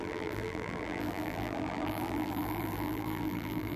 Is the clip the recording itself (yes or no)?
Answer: no